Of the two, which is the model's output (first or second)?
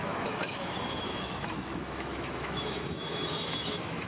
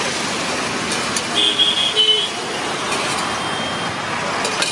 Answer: first